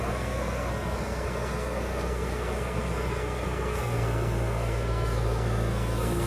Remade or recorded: remade